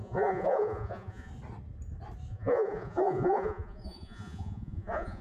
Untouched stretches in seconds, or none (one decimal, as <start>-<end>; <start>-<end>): 1.3-2.3